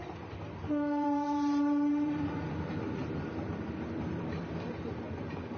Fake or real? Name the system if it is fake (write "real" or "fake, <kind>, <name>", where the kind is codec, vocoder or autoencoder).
fake, vocoder, BigVGAN v2